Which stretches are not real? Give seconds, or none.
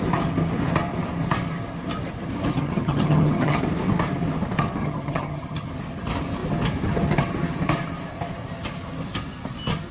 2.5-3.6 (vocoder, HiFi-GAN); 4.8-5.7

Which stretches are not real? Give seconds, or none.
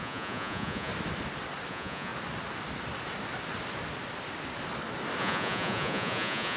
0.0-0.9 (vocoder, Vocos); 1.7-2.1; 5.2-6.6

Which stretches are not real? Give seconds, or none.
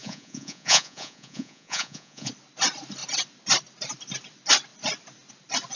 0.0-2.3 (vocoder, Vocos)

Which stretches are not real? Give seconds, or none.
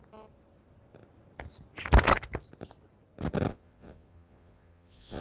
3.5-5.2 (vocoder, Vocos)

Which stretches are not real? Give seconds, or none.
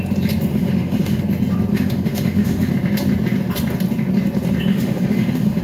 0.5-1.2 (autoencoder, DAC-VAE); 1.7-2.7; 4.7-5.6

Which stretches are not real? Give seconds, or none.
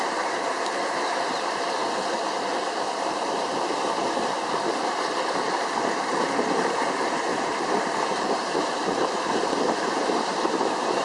0.0-1.8 (vocoder, BigVGAN v2); 2.9-11.0